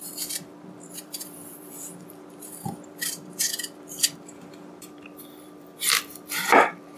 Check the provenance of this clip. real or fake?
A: fake